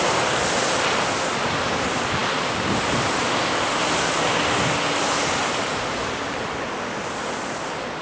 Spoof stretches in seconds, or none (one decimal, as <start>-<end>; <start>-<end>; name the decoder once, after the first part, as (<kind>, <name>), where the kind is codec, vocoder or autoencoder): none